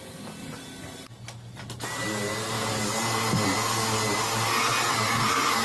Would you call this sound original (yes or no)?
yes